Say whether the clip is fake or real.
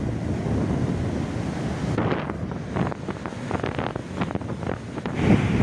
real